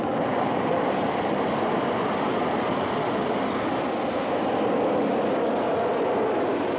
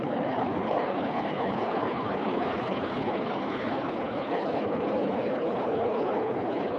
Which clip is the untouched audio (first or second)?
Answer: first